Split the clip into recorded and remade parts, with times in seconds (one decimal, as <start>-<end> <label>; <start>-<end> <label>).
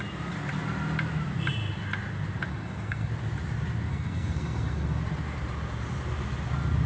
0.0-2.5 recorded; 2.5-3.1 remade; 3.1-3.9 recorded; 3.9-5.0 remade; 5.0-6.9 recorded